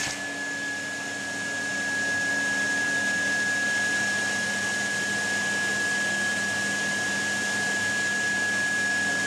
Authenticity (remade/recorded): recorded